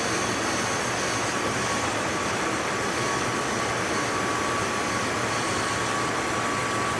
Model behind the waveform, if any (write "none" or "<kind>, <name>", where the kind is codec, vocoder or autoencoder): none